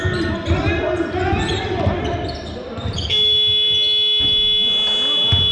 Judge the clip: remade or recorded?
recorded